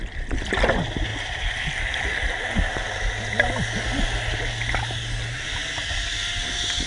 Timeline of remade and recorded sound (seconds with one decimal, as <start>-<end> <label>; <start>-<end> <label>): 0.0-6.9 recorded